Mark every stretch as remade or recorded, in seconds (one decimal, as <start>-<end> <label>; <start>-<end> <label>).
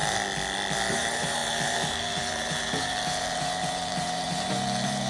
0.0-0.9 recorded; 0.9-5.1 remade